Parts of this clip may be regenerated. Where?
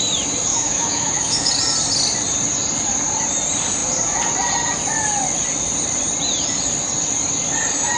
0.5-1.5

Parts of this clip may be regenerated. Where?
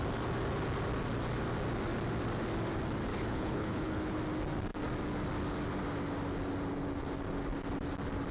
3.1-4.2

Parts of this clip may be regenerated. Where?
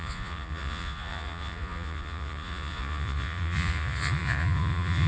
0.0-5.1